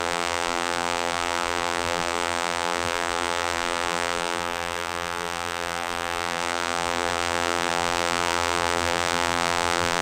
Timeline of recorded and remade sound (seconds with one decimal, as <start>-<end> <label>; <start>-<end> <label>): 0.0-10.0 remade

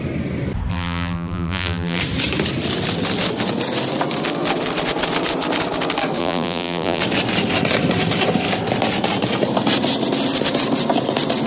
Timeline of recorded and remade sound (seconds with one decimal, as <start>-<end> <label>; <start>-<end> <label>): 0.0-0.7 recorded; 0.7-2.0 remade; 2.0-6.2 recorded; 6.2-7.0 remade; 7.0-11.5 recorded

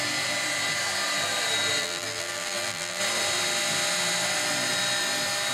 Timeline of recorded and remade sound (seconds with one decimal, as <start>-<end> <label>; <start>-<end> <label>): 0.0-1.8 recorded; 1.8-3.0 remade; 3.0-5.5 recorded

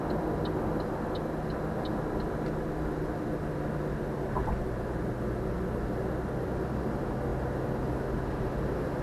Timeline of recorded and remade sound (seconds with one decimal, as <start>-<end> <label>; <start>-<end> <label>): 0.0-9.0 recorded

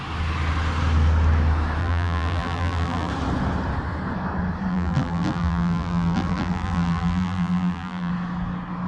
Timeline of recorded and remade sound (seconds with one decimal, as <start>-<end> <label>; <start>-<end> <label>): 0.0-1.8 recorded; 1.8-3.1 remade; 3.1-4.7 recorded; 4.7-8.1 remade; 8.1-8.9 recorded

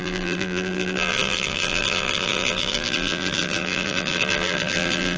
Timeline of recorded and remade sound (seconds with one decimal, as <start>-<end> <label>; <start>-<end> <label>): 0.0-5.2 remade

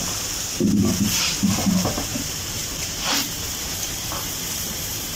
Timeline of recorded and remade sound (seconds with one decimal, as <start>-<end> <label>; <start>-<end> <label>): 0.0-2.1 recorded; 2.1-5.2 remade